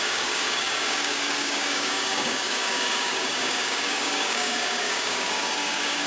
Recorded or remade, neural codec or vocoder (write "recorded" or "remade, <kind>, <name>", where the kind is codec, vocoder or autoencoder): remade, codec, DAC